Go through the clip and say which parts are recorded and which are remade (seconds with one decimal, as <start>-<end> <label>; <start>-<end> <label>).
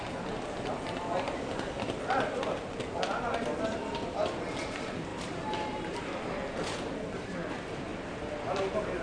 0.0-5.1 recorded; 5.1-6.0 remade; 6.0-9.0 recorded